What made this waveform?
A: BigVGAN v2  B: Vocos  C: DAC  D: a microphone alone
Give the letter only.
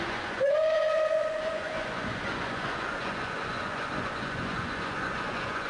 B